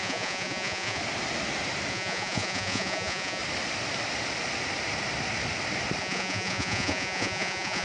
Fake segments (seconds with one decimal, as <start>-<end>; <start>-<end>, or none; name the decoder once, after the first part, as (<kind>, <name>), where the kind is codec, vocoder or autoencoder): 0.0-1.0 (vocoder, Vocos); 1.9-3.4; 6.0-7.8